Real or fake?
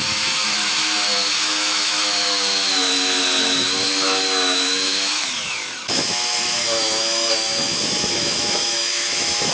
fake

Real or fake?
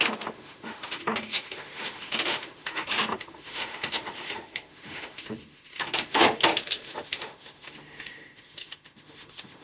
fake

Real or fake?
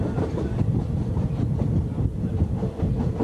real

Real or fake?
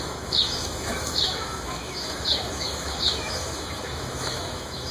fake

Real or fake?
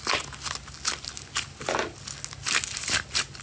real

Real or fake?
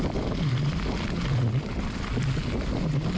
real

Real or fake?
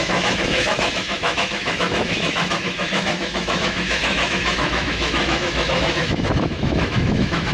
fake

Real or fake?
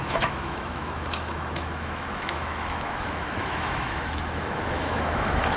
fake